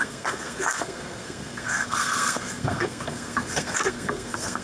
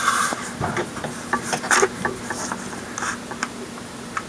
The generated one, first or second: first